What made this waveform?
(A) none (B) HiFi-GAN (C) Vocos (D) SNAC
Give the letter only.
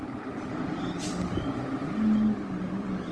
A